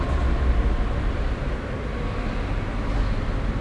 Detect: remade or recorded recorded